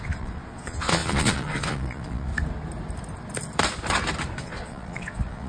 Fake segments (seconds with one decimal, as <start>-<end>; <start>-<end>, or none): 0.0-2.3; 4.4-5.5